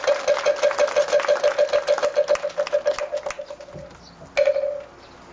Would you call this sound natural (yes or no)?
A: yes